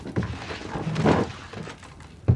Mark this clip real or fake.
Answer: real